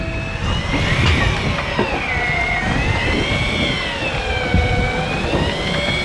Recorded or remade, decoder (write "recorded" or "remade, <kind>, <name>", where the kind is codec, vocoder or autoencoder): recorded